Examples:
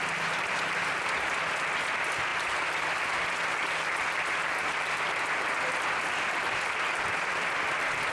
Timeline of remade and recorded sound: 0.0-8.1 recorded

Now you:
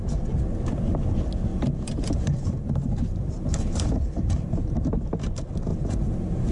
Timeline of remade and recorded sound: 0.0-1.5 recorded; 1.5-4.9 remade; 4.9-5.7 recorded; 5.7-6.5 remade

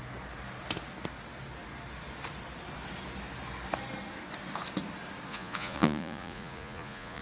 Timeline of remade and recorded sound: 0.0-5.3 recorded; 5.3-7.2 remade

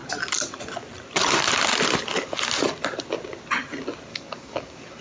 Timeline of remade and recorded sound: 0.0-4.1 recorded; 4.1-5.0 remade